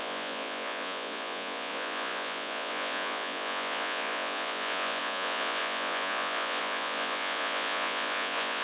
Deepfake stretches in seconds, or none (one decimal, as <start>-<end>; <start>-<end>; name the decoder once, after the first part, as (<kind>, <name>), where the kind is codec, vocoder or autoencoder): 0.0-8.6 (vocoder, Vocos)